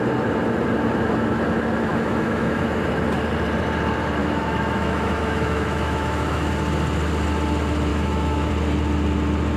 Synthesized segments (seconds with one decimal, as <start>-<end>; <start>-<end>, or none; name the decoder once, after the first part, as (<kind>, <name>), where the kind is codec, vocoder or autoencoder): 1.9-2.8 (autoencoder, DAC-VAE); 4.2-6.5; 7.9-8.5